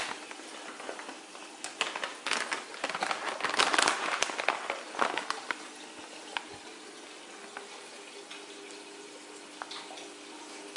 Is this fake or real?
real